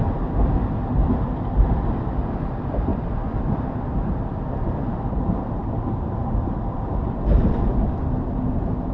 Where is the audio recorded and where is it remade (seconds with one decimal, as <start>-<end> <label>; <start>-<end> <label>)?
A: 0.0-2.9 recorded; 2.9-3.7 remade; 3.7-5.6 recorded; 5.6-8.4 remade; 8.4-8.9 recorded